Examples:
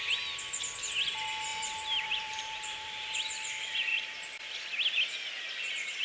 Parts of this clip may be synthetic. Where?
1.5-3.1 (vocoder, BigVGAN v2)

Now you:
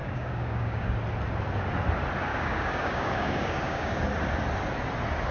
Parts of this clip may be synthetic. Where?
0.0-0.9 (codec, DAC); 2.3-4.0

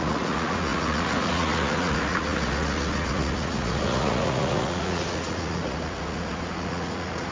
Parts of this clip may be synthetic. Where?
0.0-7.3 (vocoder, Vocos)